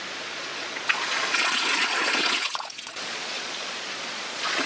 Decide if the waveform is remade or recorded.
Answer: remade